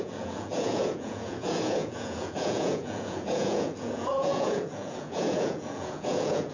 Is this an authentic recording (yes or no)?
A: no